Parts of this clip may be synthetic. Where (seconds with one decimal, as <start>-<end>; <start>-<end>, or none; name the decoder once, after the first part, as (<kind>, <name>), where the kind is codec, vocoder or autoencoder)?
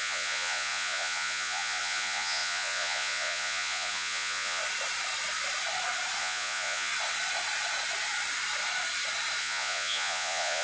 0.0-4.6 (vocoder, Vocos); 6.2-6.9; 9.4-10.6